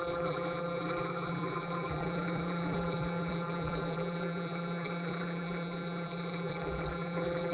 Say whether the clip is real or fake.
fake